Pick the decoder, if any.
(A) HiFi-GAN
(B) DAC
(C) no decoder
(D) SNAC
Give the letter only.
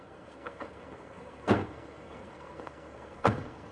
D